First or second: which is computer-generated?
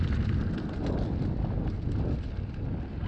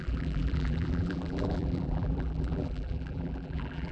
second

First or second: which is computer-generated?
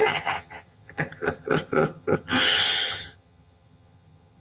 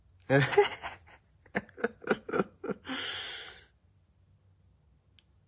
first